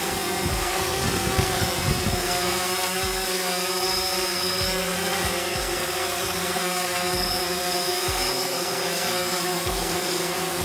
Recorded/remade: remade